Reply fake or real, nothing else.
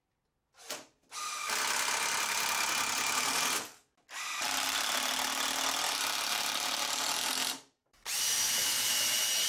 real